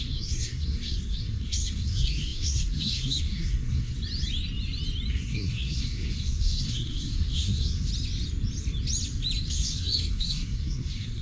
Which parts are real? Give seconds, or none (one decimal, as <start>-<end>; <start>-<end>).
3.9-5.1; 7.9-9.5